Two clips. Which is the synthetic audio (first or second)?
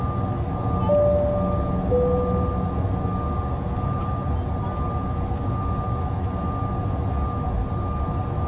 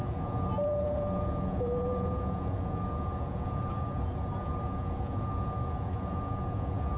second